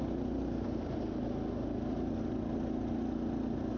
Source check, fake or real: real